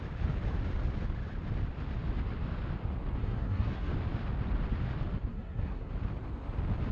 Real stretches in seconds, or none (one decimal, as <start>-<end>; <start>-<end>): 0.0-3.2; 3.9-5.3; 5.9-6.9